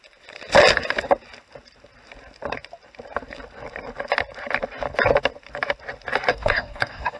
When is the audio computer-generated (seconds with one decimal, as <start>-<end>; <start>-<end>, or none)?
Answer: 6.3-7.2